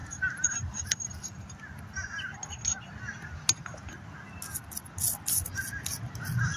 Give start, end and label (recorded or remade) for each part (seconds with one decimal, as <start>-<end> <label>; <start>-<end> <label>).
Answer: 0.0-0.6 remade; 0.6-6.6 recorded